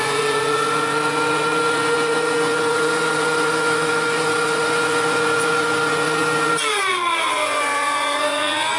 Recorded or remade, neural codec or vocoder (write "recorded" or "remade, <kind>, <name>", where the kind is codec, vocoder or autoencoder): remade, vocoder, Vocos